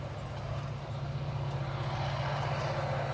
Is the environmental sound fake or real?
real